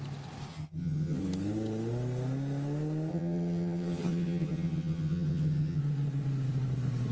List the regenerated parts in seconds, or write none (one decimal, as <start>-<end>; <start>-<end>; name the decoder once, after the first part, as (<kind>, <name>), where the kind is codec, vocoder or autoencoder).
0.5-1.2 (vocoder, HiFi-GAN); 3.1-5.8